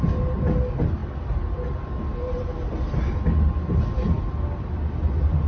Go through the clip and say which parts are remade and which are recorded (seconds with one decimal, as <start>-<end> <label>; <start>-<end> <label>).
0.0-5.5 recorded